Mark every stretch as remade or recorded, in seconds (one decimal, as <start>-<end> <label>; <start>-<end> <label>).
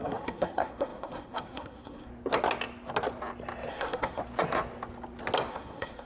0.0-2.1 remade; 2.1-3.7 recorded; 3.7-4.2 remade; 4.2-5.5 recorded; 5.5-6.1 remade